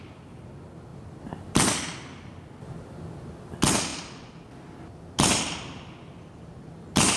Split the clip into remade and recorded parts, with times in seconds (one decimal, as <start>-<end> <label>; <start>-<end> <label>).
0.0-0.9 recorded; 0.9-2.8 remade; 2.8-3.9 recorded; 3.9-4.8 remade; 4.8-7.2 recorded